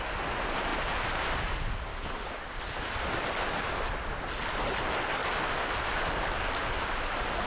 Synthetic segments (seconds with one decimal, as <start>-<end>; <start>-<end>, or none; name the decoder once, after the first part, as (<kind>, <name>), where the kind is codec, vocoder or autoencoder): 0.7-1.5 (vocoder, BigVGAN v2)